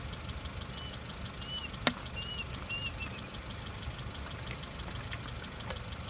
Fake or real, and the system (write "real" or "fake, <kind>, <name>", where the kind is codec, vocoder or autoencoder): real